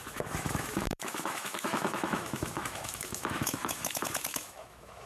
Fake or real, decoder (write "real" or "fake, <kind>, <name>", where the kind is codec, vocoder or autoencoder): fake, autoencoder, DAC-VAE